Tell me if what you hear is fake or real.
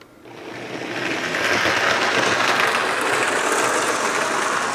real